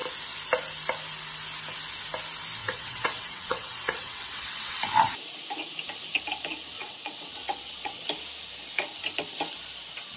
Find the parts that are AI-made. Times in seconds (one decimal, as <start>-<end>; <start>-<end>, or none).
2.6-4.8; 6.8-8.0